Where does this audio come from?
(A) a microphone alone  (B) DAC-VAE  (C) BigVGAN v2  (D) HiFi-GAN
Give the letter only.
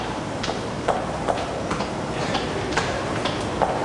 C